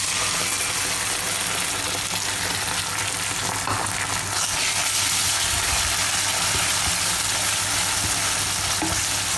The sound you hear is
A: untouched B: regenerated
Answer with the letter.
A